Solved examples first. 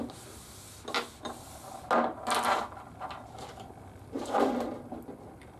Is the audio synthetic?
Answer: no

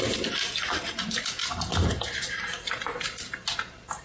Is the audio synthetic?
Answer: no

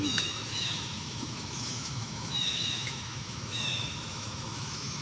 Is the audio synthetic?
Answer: yes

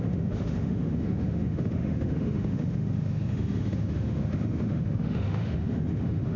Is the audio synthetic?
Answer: yes